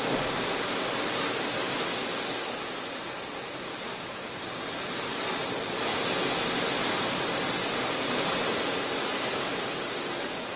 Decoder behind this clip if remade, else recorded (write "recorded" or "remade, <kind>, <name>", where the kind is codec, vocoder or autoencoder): recorded